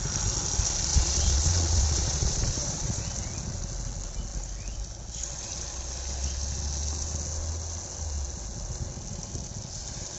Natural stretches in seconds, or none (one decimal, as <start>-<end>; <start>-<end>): 0.0-0.9; 3.0-10.2